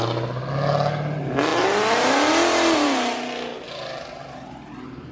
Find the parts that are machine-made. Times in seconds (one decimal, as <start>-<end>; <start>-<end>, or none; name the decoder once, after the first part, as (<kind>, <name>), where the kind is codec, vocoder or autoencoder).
none

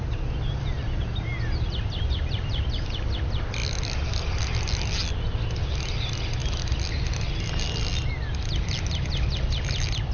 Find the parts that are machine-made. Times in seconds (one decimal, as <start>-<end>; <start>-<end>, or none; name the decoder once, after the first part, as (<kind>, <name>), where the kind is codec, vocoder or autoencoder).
none

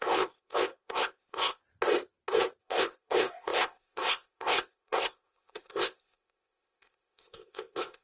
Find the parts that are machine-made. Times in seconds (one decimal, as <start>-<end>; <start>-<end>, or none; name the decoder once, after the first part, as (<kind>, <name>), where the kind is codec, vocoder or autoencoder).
0.0-1.6 (codec, ZipCodec); 2.6-8.0

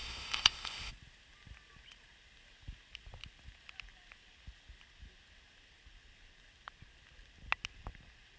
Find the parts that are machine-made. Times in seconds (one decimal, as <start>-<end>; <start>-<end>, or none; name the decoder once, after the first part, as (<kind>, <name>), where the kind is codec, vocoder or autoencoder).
0.0-0.9 (codec, ZipCodec)

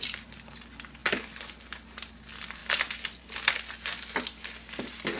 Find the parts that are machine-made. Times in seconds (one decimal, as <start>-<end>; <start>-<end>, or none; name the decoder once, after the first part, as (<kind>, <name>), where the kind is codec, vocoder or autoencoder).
none

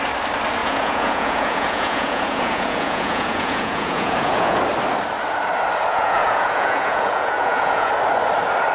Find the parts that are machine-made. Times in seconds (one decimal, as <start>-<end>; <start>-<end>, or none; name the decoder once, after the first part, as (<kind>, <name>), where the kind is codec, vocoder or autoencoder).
0.6-4.6 (vocoder, Vocos); 5.9-7.9

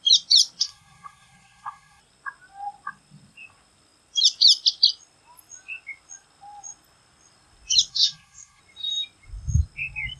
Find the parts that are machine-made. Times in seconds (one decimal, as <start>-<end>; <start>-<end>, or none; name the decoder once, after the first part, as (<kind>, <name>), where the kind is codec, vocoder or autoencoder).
0.6-2.0 (codec, SNAC); 7.9-8.6

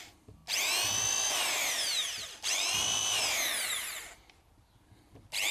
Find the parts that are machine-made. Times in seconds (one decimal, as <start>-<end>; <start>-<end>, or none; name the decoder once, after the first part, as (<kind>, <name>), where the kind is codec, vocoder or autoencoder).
0.0-0.4 (vocoder, BigVGAN v2); 1.3-2.0